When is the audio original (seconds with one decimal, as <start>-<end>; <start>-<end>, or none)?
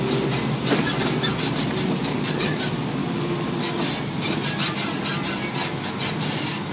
0.0-2.1; 2.6-6.7